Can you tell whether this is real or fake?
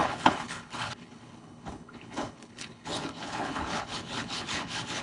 fake